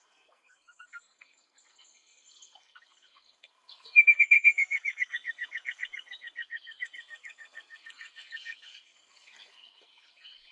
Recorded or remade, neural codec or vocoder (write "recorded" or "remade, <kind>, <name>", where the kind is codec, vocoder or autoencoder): remade, codec, SNAC